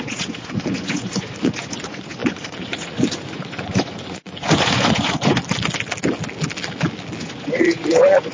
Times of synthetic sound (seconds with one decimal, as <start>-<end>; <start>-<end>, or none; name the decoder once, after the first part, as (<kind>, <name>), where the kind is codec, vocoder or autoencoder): 0.0-5.4 (vocoder, Vocos); 7.2-8.3